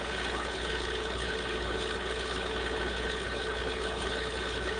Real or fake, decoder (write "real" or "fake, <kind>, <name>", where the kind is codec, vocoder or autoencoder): fake, codec, HILCodec